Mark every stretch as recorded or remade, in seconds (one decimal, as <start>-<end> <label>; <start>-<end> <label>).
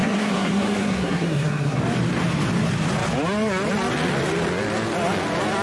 0.0-1.8 remade; 1.8-5.6 recorded